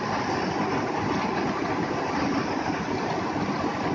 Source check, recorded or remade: recorded